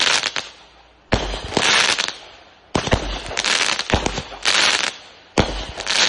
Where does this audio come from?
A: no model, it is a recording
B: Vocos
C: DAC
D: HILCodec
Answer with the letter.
A